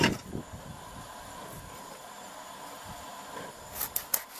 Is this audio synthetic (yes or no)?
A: no